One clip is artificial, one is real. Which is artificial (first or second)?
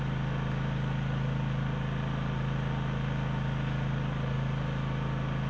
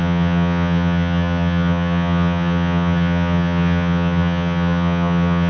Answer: second